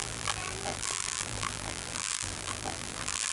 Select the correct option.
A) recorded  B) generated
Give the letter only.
B